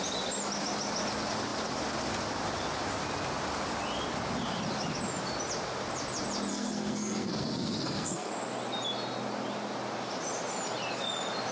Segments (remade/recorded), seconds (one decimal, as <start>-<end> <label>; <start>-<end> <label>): 0.0-6.5 recorded; 6.5-8.3 remade; 8.3-11.5 recorded